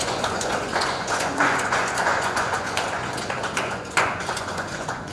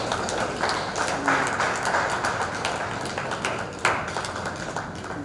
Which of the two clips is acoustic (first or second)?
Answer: second